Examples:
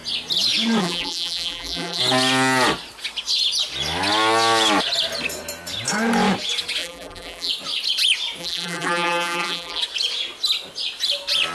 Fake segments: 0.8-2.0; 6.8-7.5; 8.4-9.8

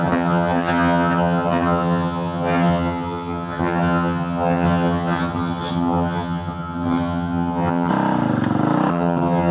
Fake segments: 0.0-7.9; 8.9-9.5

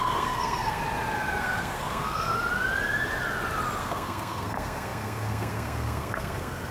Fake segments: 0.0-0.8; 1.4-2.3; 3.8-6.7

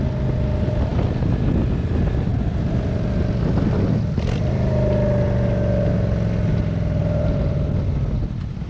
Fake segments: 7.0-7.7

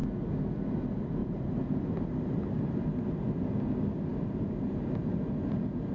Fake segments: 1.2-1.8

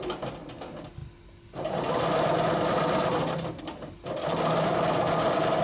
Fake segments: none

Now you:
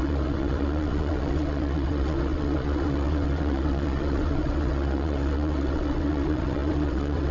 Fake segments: 0.0-7.3